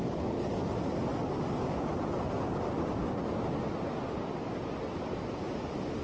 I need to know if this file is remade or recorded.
recorded